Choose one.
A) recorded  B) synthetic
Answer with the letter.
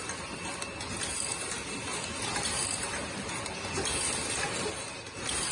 A